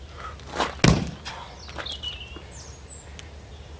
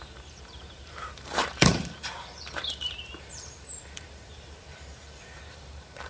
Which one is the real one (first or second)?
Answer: first